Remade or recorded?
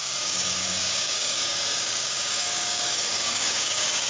remade